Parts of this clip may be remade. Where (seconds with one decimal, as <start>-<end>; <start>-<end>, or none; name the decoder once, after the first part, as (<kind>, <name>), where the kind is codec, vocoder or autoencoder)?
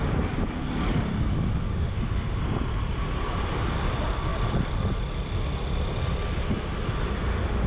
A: 1.7-2.4 (autoencoder, DAC-VAE)